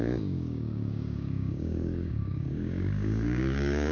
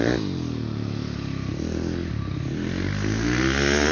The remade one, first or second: first